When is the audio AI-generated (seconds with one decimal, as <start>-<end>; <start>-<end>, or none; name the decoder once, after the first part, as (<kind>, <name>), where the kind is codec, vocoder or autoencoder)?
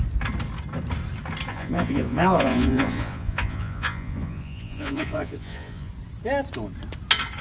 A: 1.5-5.9 (vocoder, Vocos)